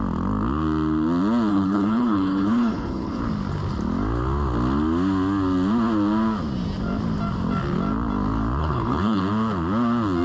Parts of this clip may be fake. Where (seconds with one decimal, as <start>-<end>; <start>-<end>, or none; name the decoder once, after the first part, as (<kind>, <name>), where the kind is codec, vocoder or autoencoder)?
1.5-3.2 (codec, HILCodec); 8.6-9.2